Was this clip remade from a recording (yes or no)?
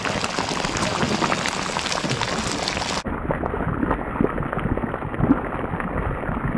no